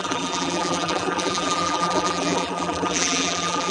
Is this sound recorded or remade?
remade